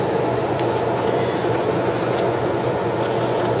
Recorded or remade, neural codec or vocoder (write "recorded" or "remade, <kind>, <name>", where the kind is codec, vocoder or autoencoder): remade, vocoder, Vocos